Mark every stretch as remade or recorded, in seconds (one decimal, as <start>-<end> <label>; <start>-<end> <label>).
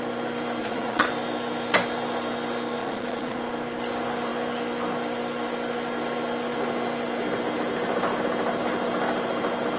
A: 0.0-0.6 recorded; 0.6-1.1 remade; 1.1-2.8 recorded; 2.8-3.4 remade; 3.4-9.8 recorded